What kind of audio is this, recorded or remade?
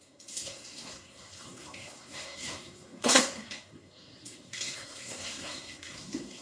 remade